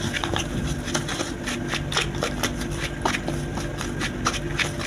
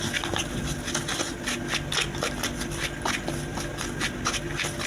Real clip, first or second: second